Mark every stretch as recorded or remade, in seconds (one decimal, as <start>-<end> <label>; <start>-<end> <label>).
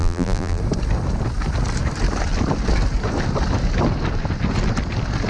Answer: 0.0-0.6 remade; 0.6-5.3 recorded